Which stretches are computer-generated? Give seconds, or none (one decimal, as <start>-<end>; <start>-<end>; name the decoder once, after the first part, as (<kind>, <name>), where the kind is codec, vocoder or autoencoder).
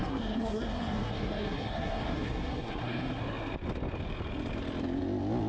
0.0-3.2 (codec, SNAC)